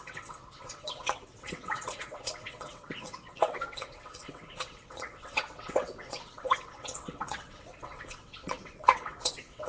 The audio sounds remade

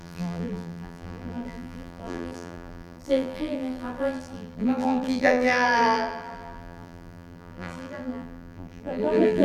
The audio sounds remade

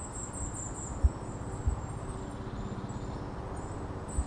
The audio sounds recorded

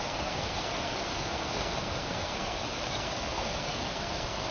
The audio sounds remade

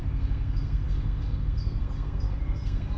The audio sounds remade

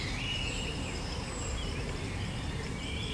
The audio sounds remade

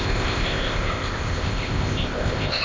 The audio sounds remade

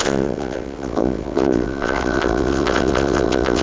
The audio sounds remade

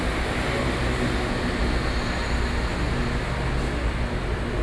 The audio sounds recorded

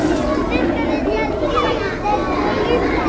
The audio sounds recorded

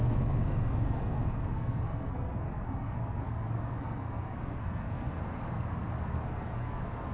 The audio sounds remade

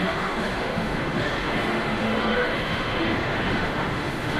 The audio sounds remade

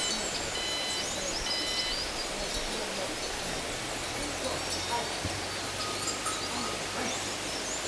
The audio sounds recorded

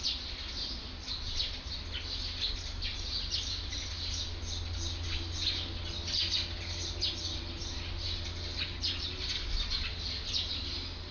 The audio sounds recorded